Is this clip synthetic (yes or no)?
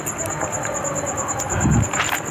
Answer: no